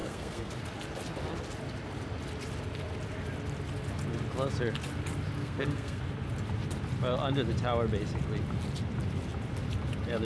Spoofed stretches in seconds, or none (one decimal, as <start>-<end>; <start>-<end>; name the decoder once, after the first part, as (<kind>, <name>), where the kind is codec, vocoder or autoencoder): 0.0-0.5 (codec, SNAC); 5.4-6.0